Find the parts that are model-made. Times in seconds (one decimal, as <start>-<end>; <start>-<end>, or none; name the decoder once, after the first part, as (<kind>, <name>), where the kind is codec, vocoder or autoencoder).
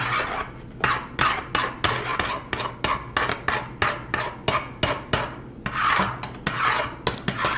none